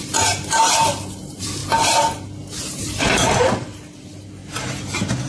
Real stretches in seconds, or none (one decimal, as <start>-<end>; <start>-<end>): 0.0-5.3